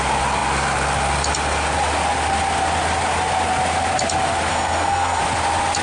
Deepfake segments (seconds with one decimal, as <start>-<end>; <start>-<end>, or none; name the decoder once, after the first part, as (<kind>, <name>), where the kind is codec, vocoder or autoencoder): 4.5-5.2 (codec, SNAC)